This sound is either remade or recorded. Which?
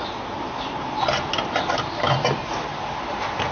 recorded